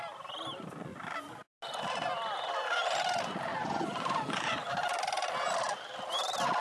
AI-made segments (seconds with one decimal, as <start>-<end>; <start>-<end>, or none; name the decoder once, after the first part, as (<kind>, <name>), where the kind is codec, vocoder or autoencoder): 3.5-4.7 (vocoder, Vocos)